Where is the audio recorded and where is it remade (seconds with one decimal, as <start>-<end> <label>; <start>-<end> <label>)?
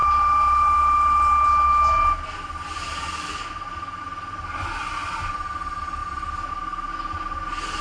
0.0-7.8 recorded